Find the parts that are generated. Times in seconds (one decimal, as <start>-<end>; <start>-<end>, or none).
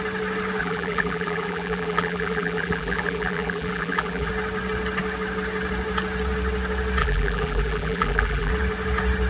0.6-4.3; 7.0-8.5